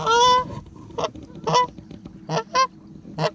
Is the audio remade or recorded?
recorded